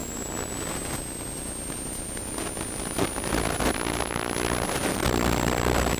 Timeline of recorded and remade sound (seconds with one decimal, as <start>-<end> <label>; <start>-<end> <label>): 0.0-6.0 recorded